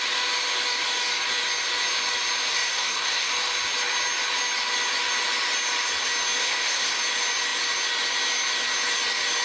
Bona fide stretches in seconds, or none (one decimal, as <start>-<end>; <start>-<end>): 0.0-2.5; 3.3-6.4; 7.0-9.4